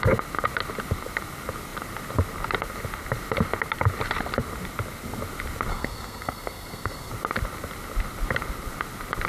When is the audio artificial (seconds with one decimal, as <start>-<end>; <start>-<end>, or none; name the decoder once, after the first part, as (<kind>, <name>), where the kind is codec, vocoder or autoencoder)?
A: 5.7-7.1 (codec, SNAC)